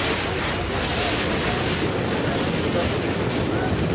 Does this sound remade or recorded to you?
recorded